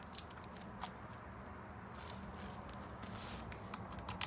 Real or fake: real